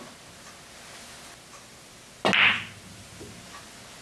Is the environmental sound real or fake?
real